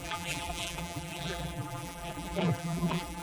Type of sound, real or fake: fake